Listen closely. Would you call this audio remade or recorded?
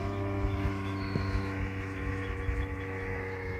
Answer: remade